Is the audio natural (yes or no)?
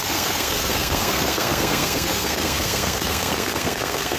no